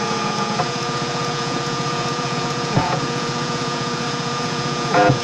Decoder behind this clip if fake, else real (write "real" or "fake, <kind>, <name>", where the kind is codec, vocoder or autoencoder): fake, vocoder, Vocos